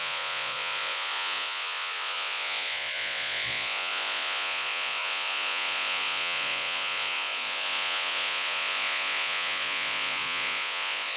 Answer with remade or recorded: remade